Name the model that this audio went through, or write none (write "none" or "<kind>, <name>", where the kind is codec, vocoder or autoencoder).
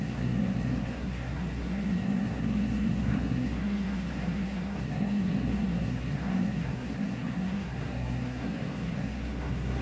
codec, SNAC